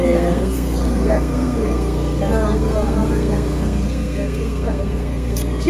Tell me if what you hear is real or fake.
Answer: fake